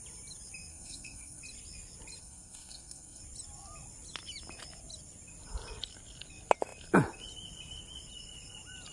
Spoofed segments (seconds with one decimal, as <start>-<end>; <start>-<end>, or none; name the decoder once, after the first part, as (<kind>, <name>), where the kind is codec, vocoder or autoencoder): 0.7-1.4 (codec, SNAC); 2.2-3.2

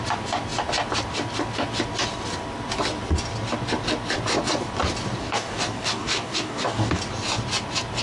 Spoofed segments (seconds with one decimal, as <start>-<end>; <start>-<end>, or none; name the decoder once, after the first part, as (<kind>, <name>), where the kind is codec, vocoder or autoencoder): 5.2-7.0 (codec, DAC)

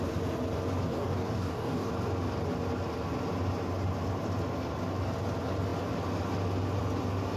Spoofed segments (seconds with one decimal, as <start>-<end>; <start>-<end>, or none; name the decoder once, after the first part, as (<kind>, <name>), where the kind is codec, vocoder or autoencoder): 0.9-1.9 (codec, DAC)

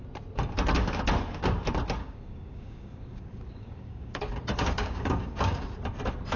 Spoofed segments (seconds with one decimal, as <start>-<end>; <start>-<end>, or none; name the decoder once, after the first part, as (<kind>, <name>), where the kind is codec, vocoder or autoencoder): 2.0-5.7 (codec, DAC)

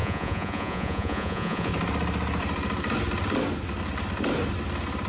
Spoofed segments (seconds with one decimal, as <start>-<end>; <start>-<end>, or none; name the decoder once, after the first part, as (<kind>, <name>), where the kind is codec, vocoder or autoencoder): 0.0-1.7 (vocoder, Vocos)